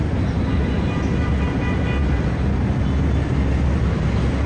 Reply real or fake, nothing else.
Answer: real